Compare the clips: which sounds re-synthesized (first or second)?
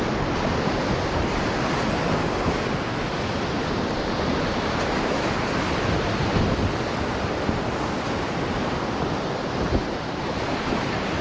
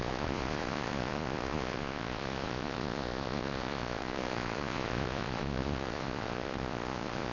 second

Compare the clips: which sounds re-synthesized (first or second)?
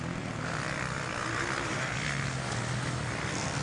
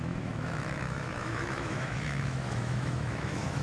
second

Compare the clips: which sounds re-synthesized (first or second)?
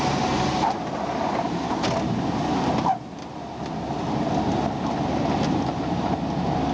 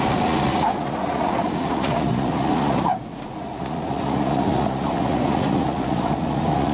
second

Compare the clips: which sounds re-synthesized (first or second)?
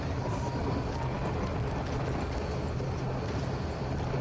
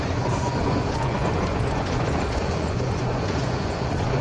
second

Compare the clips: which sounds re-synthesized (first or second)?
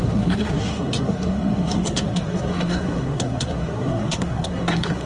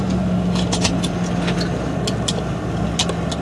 first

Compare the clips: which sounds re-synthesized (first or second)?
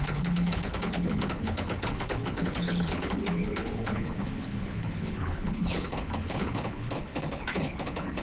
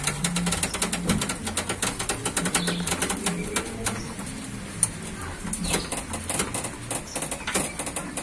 first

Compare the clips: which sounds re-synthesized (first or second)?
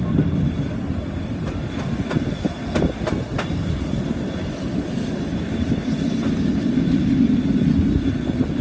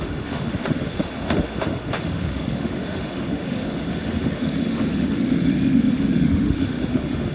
second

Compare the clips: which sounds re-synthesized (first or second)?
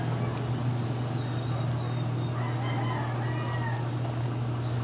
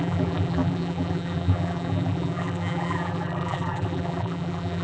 second